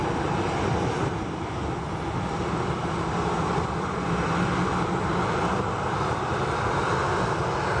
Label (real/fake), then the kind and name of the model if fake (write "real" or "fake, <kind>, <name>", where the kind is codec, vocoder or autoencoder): real